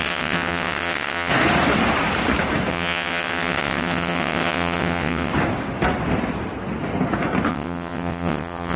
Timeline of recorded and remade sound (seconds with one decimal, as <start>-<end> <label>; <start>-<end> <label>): 0.0-1.3 remade; 1.3-2.7 recorded; 2.7-5.3 remade; 5.3-7.5 recorded; 7.5-8.8 remade